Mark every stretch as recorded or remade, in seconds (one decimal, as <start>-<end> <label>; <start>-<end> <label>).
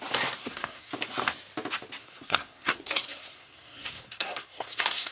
0.0-0.4 recorded; 0.4-0.9 remade; 0.9-2.0 recorded; 2.0-5.1 remade